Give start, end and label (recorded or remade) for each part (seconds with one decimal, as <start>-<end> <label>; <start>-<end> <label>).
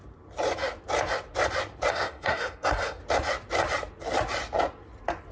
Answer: 0.0-1.9 recorded; 1.9-3.0 remade; 3.0-5.3 recorded